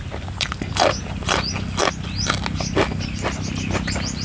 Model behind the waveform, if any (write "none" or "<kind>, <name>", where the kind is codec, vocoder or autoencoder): none